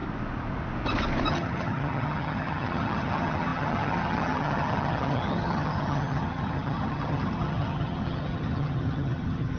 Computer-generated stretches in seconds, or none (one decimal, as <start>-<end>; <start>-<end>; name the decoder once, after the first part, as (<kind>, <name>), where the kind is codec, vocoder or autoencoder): 1.3-9.6 (vocoder, HiFi-GAN)